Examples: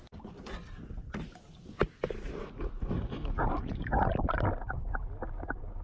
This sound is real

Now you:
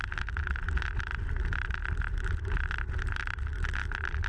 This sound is real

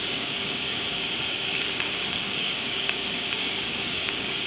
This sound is fake